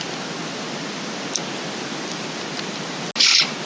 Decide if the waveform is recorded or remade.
recorded